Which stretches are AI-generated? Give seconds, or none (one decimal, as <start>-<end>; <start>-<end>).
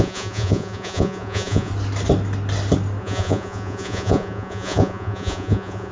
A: 0.0-1.7; 3.0-5.9